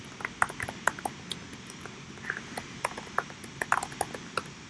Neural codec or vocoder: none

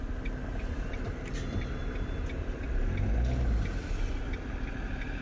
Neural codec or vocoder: none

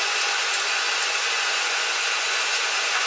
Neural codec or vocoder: vocoder, Vocos